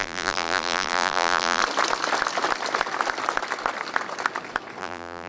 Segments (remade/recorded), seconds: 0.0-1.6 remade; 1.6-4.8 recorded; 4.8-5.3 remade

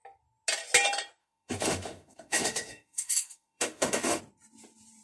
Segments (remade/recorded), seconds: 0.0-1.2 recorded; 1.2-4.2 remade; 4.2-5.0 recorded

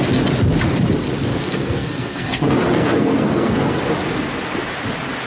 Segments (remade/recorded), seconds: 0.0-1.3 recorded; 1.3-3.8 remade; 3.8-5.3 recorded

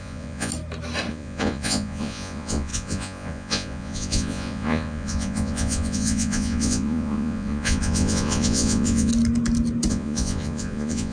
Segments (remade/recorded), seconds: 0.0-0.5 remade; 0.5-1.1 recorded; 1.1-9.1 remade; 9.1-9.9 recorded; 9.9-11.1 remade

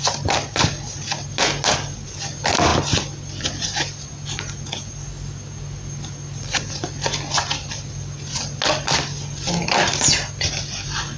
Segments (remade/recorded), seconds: 0.0-11.2 recorded

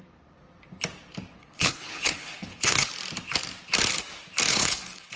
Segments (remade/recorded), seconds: 0.0-1.4 recorded; 1.4-2.9 remade; 2.9-4.5 recorded; 4.5-5.2 remade

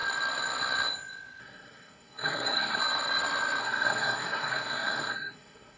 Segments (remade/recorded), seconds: 0.0-1.4 recorded; 1.4-2.8 remade; 2.8-3.6 recorded; 3.6-5.8 remade